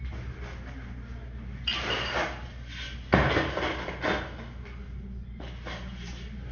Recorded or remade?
recorded